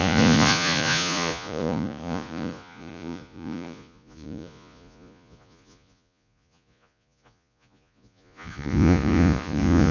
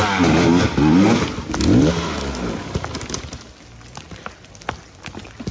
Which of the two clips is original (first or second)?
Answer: second